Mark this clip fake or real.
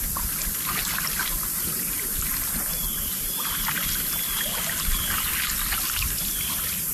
real